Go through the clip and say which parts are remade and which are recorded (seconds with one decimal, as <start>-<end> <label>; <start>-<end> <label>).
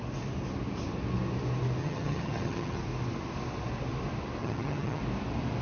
0.0-1.8 recorded; 1.8-2.8 remade; 2.8-4.4 recorded; 4.4-5.0 remade; 5.0-5.6 recorded